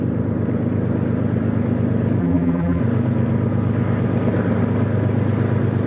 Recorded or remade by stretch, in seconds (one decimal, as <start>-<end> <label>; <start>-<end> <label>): 0.0-2.2 recorded; 2.2-2.8 remade; 2.8-5.9 recorded